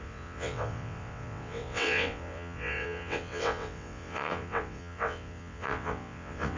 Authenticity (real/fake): fake